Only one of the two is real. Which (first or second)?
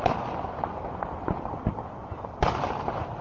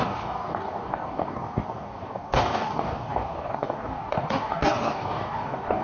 first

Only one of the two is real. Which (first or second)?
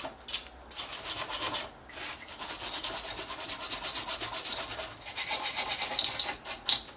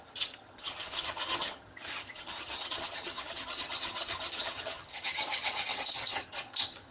first